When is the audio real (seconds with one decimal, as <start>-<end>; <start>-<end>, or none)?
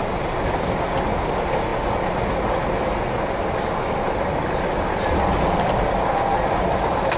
0.0-7.2